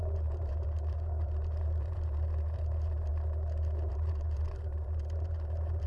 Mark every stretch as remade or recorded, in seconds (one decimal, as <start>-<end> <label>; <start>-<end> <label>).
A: 0.0-3.1 remade; 3.1-3.9 recorded; 3.9-5.9 remade